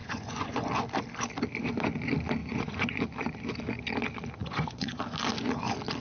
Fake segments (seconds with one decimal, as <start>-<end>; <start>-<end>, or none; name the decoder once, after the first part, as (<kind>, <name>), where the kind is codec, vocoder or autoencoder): 0.0-0.7 (vocoder, Vocos); 2.4-3.0; 4.4-5.0